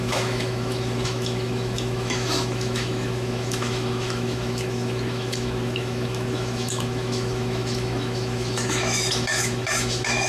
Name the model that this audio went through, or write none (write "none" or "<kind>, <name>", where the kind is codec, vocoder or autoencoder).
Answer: autoencoder, DAC-VAE